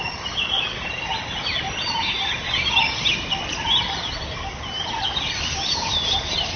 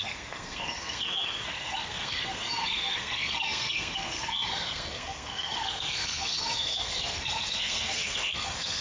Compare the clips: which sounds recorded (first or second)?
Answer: first